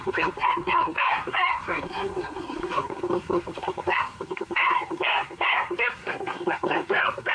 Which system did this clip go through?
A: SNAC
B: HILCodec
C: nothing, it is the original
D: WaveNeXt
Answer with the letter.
A